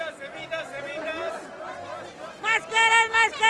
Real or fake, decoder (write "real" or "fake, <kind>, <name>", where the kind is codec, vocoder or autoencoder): real